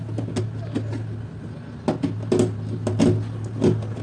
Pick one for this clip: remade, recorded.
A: recorded